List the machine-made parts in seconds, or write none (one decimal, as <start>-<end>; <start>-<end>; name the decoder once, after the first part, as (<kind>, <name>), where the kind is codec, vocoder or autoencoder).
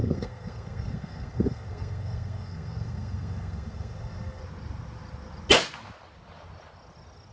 0.0-4.4 (codec, SNAC)